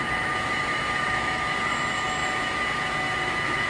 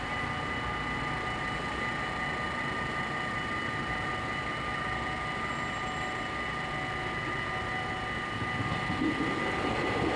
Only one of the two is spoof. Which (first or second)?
first